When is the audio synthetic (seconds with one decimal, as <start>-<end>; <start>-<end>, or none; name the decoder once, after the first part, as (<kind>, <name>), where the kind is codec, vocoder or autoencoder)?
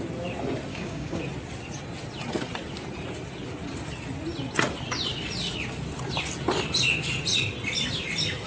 0.7-1.2 (codec, DAC)